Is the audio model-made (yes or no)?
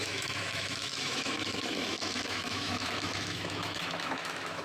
yes